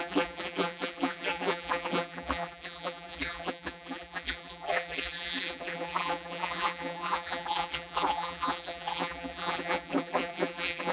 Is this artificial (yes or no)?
yes